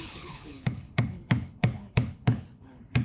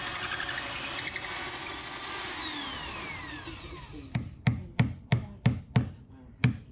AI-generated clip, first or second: first